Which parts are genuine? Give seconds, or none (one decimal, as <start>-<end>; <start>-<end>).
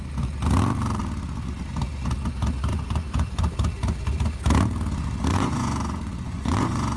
0.0-2.7; 3.5-5.3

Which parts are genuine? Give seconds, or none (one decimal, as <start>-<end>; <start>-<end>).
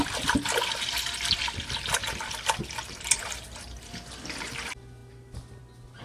0.0-6.0